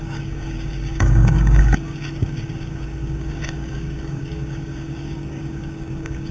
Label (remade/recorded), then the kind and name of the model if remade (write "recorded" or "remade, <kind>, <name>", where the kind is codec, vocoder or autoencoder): remade, codec, DAC